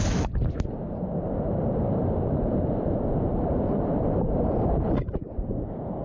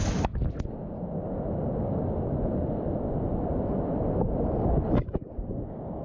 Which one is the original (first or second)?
second